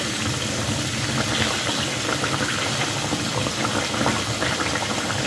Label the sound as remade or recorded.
recorded